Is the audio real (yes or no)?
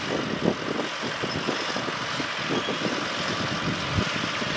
yes